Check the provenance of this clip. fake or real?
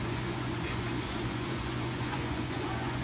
fake